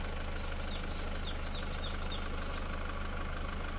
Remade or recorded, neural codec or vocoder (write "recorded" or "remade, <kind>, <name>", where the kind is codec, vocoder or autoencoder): recorded